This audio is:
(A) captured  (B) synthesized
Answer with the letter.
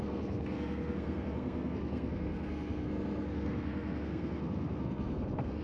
B